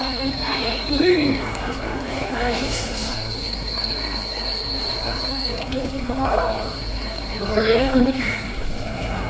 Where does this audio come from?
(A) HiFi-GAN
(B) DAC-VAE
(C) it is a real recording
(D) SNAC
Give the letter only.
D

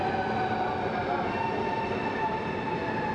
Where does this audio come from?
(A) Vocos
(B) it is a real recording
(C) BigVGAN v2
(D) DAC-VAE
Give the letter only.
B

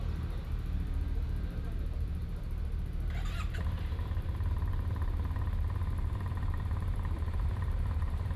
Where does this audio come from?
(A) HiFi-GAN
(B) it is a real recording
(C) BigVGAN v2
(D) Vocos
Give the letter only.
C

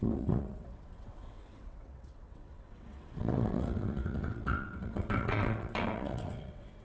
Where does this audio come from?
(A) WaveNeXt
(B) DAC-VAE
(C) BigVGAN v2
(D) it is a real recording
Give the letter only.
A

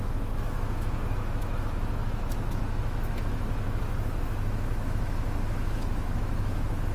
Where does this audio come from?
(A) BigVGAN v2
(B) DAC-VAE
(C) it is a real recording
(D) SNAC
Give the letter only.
B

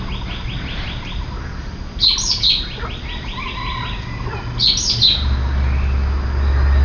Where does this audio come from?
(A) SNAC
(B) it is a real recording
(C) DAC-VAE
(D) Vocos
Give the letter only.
B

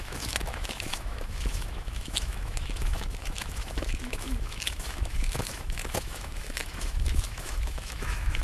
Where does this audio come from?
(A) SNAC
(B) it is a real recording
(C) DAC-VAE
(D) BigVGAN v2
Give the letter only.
C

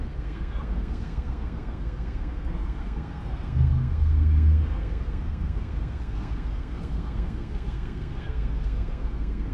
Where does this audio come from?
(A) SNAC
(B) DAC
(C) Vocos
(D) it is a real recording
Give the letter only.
A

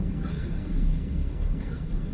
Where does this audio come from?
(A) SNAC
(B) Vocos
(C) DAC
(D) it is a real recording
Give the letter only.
A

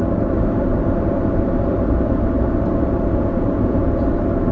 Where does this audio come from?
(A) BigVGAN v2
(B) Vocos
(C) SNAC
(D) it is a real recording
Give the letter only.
A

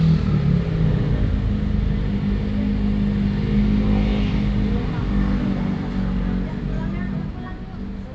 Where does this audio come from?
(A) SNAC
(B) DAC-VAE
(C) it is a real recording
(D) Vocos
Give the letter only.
C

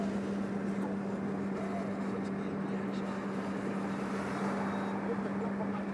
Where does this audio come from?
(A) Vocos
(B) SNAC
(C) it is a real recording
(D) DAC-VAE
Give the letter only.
C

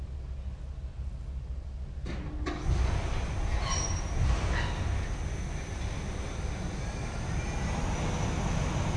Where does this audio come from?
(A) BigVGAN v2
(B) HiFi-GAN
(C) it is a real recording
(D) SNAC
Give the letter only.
C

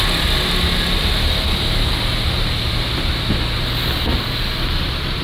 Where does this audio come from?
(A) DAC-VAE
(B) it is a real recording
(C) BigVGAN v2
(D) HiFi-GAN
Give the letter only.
B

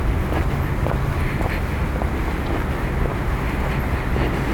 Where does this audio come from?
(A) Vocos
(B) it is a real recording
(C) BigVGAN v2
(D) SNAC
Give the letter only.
B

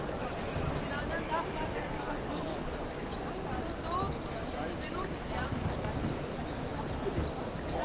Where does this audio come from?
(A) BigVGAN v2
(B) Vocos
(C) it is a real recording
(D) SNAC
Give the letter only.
A